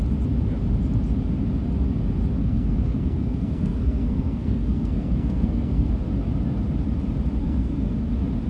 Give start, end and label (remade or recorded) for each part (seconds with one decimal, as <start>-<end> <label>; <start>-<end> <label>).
0.0-2.4 recorded; 2.4-5.9 remade; 5.9-7.4 recorded; 7.4-8.1 remade; 8.1-8.5 recorded